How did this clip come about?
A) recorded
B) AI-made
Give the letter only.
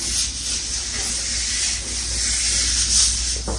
A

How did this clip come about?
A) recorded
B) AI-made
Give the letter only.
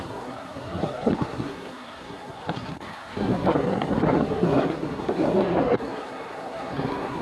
B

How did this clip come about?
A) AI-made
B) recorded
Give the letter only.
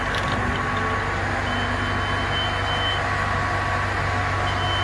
B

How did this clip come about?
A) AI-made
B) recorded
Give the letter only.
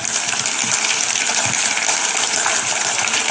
B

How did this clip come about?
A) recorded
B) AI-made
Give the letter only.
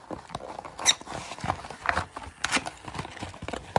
A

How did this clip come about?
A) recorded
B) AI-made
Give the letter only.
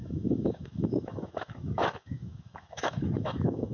B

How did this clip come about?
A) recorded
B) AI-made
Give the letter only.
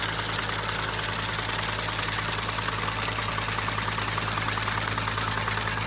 A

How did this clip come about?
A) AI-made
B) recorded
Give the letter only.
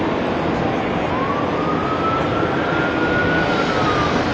B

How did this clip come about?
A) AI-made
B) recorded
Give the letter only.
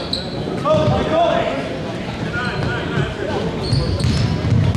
B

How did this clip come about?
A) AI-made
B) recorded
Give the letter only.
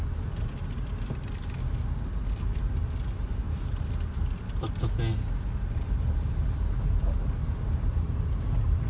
B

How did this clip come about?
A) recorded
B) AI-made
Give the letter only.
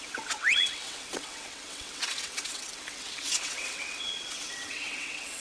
B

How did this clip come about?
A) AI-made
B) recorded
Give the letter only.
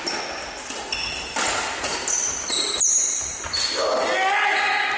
B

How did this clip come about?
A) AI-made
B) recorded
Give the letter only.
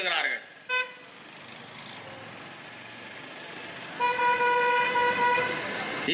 B